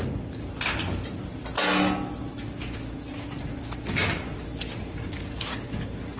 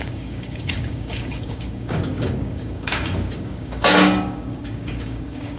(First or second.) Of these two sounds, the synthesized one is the second